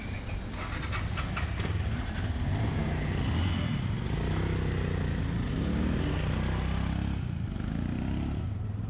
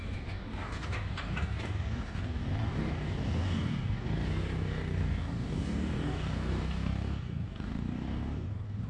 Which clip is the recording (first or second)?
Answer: first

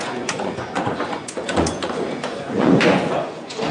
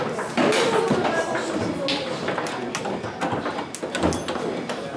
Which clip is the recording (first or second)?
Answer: second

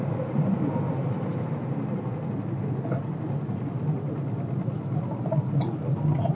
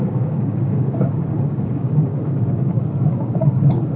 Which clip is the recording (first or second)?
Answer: first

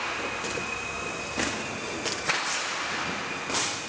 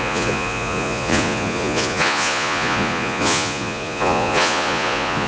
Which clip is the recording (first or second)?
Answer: first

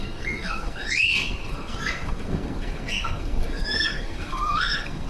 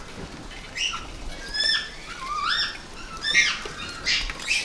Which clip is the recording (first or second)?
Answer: second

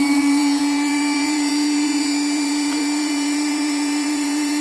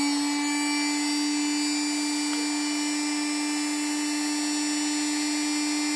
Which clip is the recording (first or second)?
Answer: second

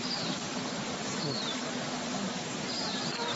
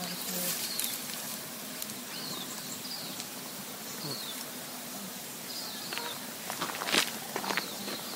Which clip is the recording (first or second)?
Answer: first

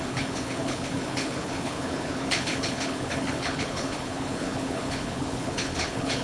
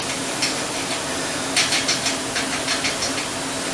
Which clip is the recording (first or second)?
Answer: second